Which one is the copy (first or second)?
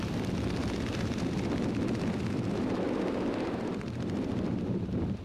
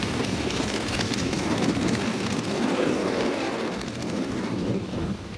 second